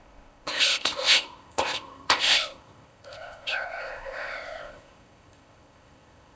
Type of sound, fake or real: fake